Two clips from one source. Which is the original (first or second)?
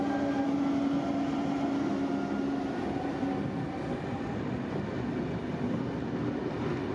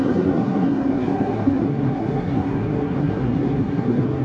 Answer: first